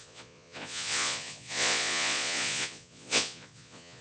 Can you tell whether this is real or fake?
fake